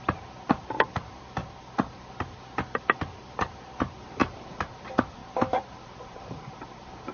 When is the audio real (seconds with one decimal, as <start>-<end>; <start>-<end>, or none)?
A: 0.0-4.2; 4.7-5.2